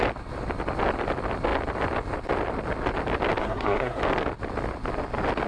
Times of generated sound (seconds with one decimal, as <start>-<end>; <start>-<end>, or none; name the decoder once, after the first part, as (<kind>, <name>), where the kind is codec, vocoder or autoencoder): 3.4-4.0 (codec, SNAC)